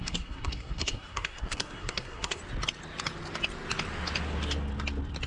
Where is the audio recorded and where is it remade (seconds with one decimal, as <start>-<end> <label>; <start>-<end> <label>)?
0.0-2.4 remade; 2.4-5.3 recorded